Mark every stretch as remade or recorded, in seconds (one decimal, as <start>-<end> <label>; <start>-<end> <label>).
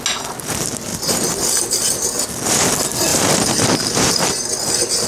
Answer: 0.0-3.1 recorded; 3.1-4.1 remade; 4.1-5.1 recorded